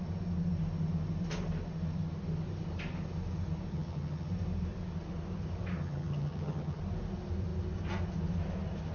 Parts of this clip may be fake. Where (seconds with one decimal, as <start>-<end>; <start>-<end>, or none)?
3.7-4.3; 5.8-6.8